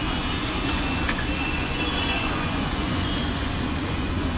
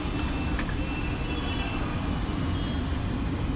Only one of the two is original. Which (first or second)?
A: second